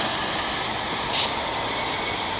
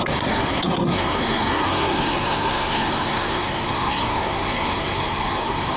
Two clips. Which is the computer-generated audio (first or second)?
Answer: second